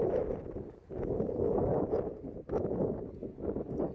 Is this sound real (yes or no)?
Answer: yes